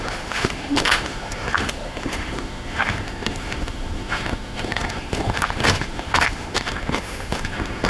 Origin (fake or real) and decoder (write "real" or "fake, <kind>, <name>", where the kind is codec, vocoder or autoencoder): fake, autoencoder, DAC-VAE